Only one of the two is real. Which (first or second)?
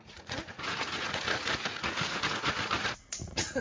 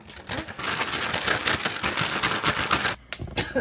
second